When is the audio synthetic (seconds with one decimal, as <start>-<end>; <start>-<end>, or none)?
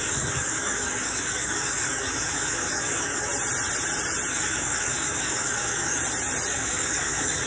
0.0-3.3; 4.3-6.0; 6.5-7.5